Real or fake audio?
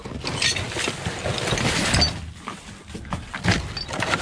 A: real